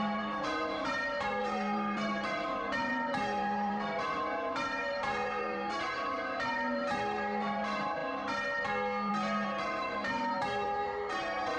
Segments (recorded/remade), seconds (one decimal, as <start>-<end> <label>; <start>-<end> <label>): 0.0-8.0 remade; 8.0-9.1 recorded; 9.1-11.6 remade

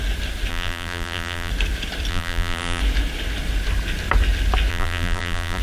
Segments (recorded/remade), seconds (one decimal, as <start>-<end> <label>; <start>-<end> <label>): 0.0-0.5 recorded; 0.5-1.5 remade; 1.5-2.1 recorded; 2.1-2.8 remade; 2.8-4.7 recorded; 4.7-5.6 remade

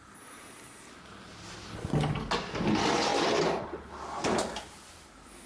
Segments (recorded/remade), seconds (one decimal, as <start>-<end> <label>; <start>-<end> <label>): 0.0-5.5 recorded

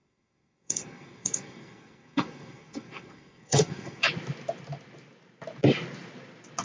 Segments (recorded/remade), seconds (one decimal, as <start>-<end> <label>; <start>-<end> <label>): 0.0-4.0 remade; 4.0-6.6 recorded

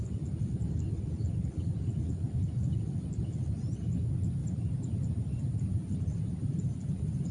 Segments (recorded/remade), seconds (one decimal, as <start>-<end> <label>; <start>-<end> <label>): 0.0-4.4 recorded; 4.4-7.3 remade

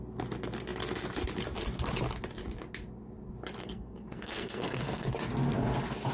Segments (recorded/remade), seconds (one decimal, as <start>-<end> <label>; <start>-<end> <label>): 0.0-3.6 recorded; 3.6-5.1 remade; 5.1-6.1 recorded

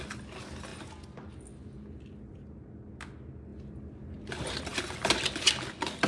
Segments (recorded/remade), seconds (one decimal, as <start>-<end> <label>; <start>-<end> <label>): 0.0-6.1 recorded

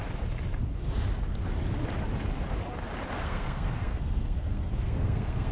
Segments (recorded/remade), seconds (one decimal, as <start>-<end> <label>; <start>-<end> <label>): 0.0-3.2 recorded; 3.2-5.5 remade